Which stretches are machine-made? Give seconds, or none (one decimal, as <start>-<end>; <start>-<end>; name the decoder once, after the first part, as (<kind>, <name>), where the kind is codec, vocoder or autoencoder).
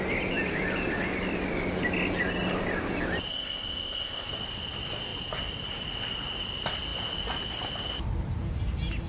3.3-4.3 (codec, ZipCodec)